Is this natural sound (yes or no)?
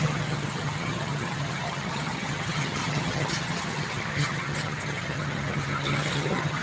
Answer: no